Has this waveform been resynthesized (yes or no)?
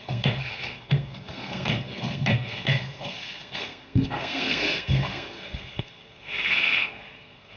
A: yes